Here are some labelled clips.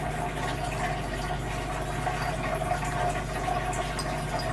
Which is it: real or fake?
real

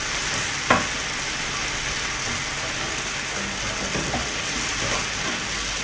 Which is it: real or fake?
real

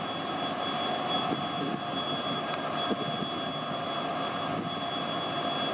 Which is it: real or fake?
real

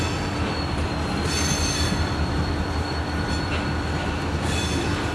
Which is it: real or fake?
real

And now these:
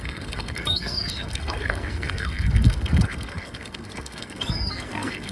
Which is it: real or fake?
fake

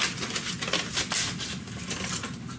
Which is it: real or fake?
real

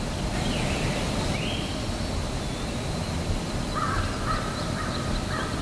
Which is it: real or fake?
real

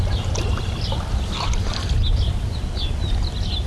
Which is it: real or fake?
real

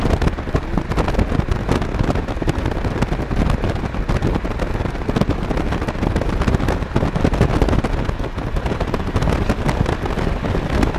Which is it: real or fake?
real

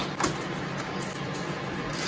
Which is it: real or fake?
real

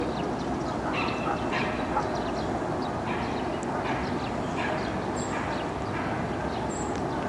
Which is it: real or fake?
real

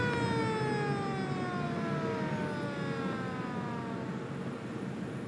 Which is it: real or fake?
real